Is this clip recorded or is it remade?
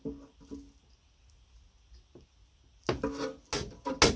recorded